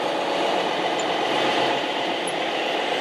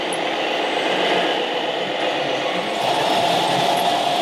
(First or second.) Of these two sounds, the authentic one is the second